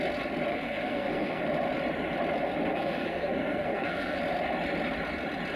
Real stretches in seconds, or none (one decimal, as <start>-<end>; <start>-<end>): 0.0-0.5; 1.4-2.7; 4.2-5.6